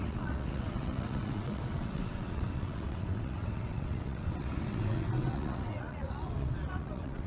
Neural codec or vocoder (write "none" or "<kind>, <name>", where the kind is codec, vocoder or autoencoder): vocoder, WaveNeXt